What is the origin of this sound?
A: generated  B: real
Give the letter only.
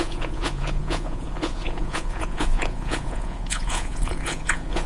A